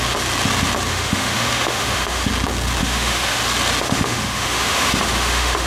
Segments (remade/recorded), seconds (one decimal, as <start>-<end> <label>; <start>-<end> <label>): 0.0-0.9 recorded; 0.9-2.3 remade; 2.3-2.8 recorded; 2.8-3.4 remade; 3.4-3.8 recorded; 3.8-5.7 remade